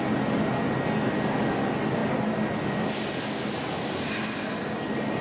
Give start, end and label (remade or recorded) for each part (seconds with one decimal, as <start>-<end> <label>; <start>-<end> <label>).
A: 0.0-5.2 recorded